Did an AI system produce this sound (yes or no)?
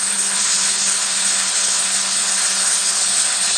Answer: yes